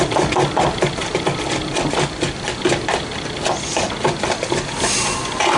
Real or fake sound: real